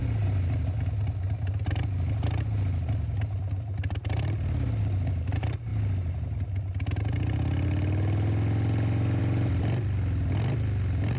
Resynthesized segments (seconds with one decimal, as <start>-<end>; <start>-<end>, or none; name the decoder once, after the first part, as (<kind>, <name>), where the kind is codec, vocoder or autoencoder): none